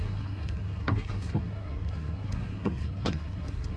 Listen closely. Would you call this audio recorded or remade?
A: remade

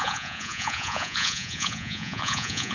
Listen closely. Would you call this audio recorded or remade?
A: remade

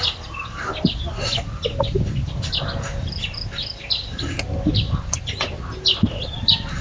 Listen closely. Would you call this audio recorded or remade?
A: recorded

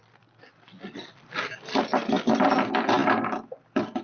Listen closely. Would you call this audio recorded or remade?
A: recorded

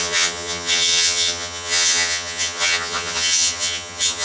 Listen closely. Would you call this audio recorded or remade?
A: remade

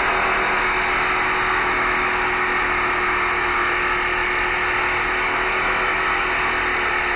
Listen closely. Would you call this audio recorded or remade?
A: recorded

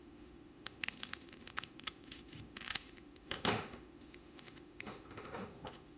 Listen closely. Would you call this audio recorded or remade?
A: remade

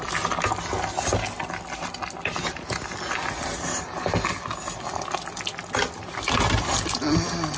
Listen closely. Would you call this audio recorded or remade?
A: recorded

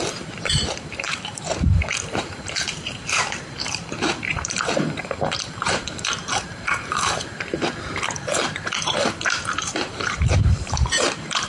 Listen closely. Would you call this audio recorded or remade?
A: remade